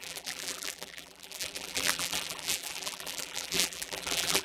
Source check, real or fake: fake